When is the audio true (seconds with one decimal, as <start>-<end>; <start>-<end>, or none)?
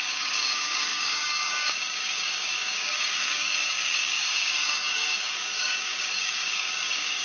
none